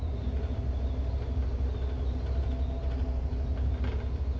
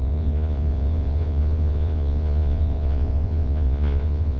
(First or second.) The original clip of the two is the first